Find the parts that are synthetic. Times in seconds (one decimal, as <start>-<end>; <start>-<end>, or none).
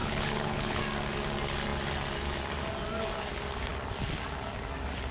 0.0-0.8